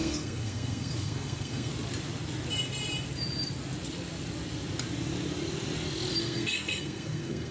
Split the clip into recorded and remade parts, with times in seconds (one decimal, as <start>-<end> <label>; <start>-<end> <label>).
0.0-1.7 remade; 1.7-6.2 recorded; 6.2-7.5 remade